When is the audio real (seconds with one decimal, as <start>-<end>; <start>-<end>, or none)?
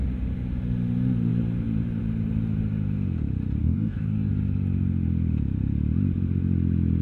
0.0-3.6; 4.3-7.0